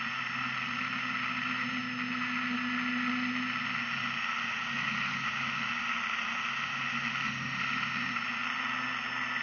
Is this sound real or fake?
real